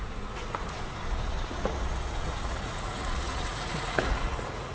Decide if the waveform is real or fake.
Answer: fake